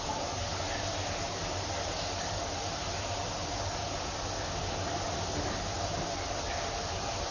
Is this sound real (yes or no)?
yes